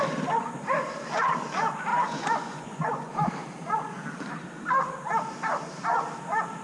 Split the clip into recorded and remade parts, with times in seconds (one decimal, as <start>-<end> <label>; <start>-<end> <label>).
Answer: 0.0-1.9 recorded; 1.9-3.1 remade; 3.1-6.6 recorded